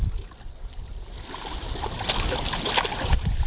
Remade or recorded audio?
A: recorded